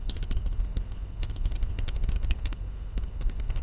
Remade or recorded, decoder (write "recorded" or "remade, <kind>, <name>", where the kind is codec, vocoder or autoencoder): remade, codec, SNAC